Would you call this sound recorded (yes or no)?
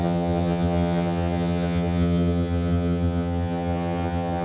no